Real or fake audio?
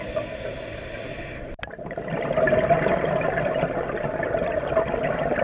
real